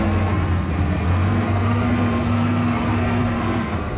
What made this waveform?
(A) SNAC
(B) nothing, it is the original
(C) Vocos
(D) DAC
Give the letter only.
A